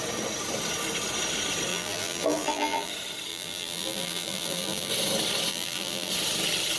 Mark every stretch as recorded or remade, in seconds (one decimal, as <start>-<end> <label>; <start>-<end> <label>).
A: 0.0-1.7 recorded; 1.7-2.9 remade; 2.9-3.3 recorded; 3.3-4.9 remade; 4.9-5.5 recorded; 5.5-6.1 remade; 6.1-6.8 recorded